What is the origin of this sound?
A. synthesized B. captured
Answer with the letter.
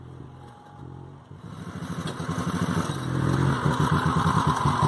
B